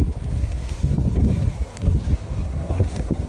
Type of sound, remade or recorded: remade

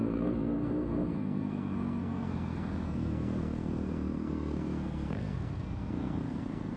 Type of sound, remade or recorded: remade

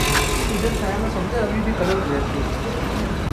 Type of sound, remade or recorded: recorded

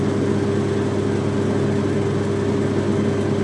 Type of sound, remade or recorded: recorded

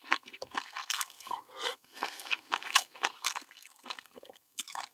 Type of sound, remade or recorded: remade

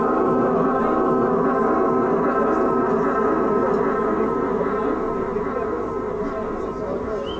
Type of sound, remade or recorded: recorded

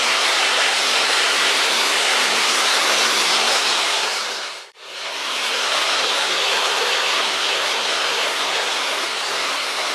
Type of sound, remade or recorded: remade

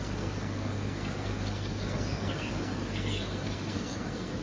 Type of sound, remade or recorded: remade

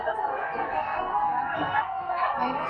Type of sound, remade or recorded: remade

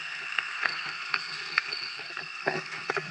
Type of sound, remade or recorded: remade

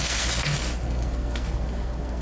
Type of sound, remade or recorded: remade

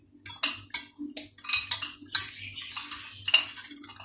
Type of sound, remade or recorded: recorded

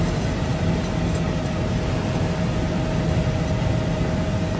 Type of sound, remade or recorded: recorded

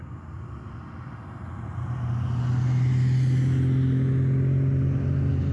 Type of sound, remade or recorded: recorded